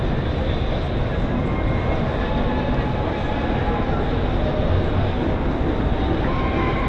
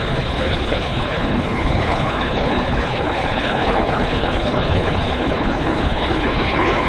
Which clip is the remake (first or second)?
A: second